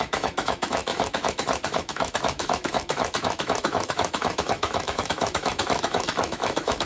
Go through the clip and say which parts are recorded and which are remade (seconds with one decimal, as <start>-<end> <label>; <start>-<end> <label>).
0.0-6.9 remade